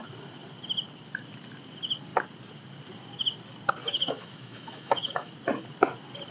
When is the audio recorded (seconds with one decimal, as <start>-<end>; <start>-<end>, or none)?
0.0-3.8; 5.3-6.3